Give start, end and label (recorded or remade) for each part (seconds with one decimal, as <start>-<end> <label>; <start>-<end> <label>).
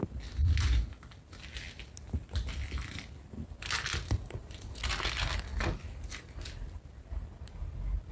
0.0-4.4 recorded; 4.4-4.9 remade; 4.9-8.1 recorded